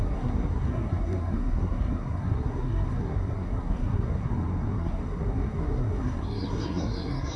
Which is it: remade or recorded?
remade